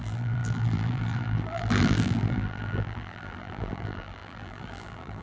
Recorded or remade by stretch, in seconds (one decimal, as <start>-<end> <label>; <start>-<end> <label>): 0.0-5.2 remade